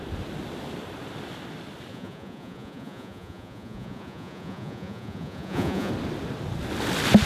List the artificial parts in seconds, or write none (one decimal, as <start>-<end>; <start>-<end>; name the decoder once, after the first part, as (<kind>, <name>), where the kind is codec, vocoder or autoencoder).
1.9-5.9 (vocoder, Vocos)